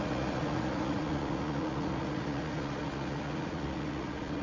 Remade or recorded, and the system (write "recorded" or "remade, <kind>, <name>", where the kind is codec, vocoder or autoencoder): remade, vocoder, Vocos